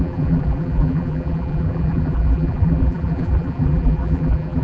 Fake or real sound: fake